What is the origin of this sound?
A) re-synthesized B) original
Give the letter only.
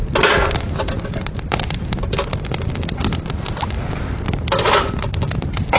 B